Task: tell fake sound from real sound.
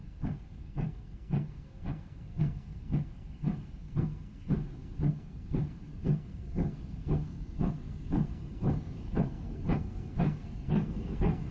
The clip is fake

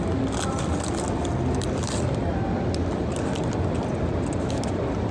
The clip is real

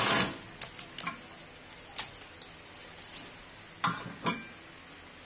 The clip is real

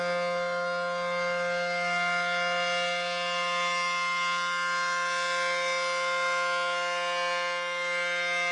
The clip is real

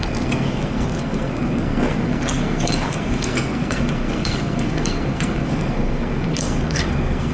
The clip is fake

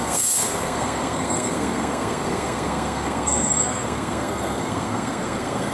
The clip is fake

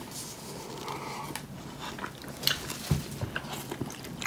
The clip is real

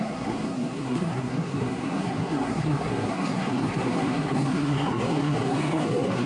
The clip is fake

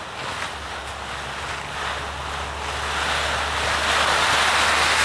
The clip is real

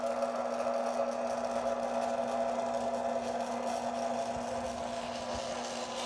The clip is real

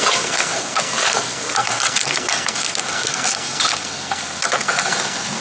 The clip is fake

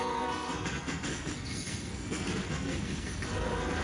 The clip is fake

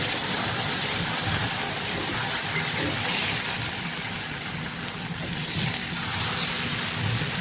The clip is real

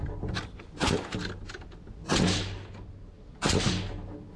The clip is real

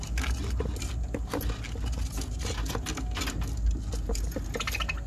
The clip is real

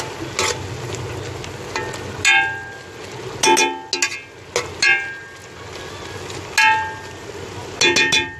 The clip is real